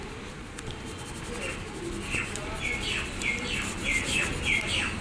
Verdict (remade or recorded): recorded